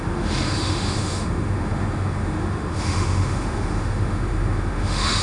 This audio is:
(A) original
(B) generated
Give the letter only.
B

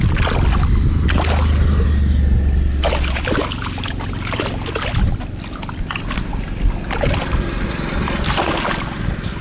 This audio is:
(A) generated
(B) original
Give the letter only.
B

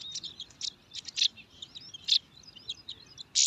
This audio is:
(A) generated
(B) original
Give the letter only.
B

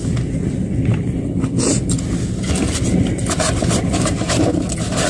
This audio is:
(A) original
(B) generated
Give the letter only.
A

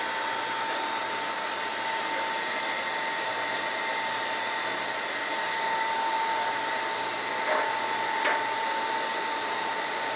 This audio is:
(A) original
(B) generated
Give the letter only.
A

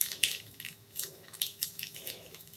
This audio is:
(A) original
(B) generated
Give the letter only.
B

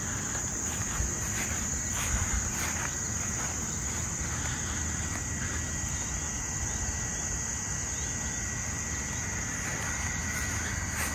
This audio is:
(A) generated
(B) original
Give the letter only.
B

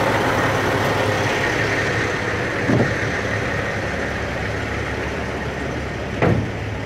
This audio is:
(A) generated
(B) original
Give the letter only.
B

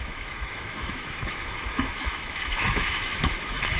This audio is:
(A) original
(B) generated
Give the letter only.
B